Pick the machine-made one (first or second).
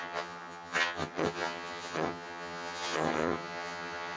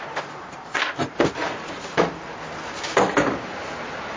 first